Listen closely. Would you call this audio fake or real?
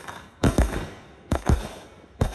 fake